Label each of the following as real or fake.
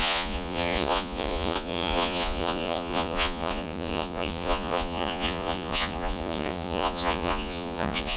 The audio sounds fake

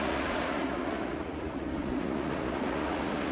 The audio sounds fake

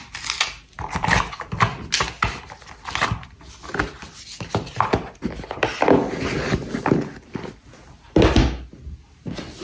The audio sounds real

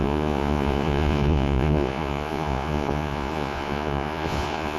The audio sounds fake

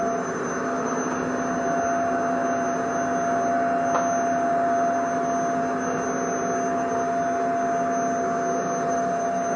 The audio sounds real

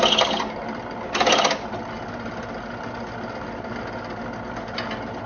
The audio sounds real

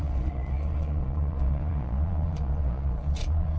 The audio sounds fake